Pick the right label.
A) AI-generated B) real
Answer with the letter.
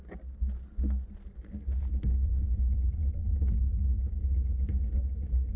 B